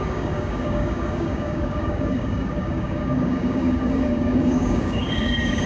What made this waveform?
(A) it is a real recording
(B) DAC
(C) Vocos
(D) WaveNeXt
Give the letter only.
B